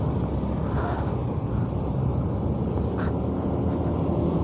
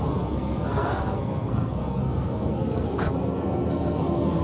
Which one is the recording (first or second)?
first